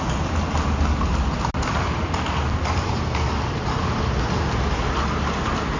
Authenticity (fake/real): real